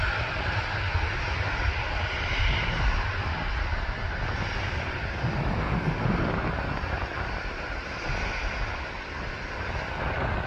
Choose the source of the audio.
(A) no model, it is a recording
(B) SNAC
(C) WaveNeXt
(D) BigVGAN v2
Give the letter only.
A